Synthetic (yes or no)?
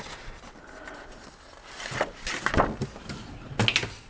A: no